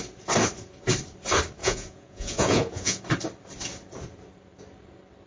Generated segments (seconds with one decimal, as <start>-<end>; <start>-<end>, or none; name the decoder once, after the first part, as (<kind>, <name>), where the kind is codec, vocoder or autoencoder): 1.6-3.0 (vocoder, Vocos)